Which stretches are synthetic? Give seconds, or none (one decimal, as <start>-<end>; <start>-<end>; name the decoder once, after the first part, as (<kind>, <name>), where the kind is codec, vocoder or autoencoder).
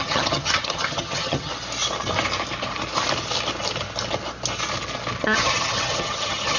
0.0-1.5 (vocoder, HiFi-GAN); 5.2-6.6